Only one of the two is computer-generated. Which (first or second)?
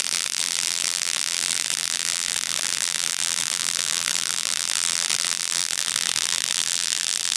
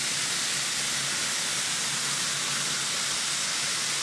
first